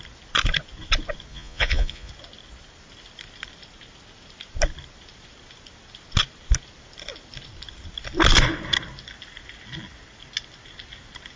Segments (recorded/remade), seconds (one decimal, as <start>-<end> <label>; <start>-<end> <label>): 0.0-1.3 recorded; 1.3-2.1 remade; 2.1-11.4 recorded